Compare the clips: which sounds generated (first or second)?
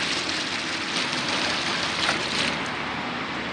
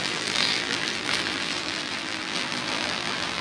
second